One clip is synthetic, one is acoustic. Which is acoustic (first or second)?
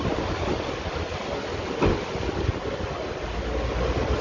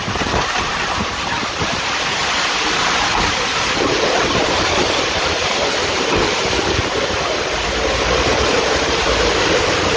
first